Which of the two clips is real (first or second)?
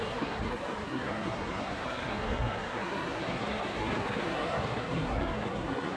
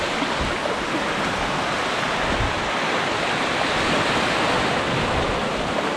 second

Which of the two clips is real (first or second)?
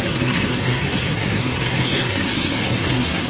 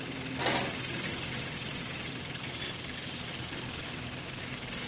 second